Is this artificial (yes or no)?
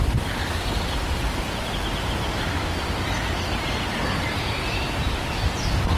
no